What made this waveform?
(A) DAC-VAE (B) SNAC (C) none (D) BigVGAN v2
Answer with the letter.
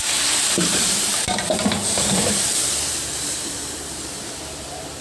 D